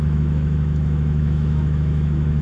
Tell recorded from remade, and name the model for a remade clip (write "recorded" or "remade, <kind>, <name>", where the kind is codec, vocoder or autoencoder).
remade, autoencoder, DAC-VAE